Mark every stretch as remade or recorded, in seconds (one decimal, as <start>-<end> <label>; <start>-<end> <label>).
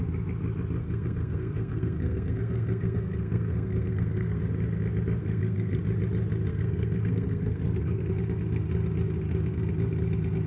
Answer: 0.0-0.8 recorded; 0.8-4.4 remade; 4.4-5.2 recorded; 5.2-5.8 remade; 5.8-6.5 recorded; 6.5-8.1 remade; 8.1-10.5 recorded